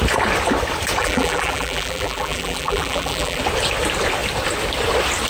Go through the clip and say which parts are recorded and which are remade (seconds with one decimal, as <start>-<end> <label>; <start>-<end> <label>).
0.0-1.0 recorded; 1.0-3.4 remade; 3.4-5.3 recorded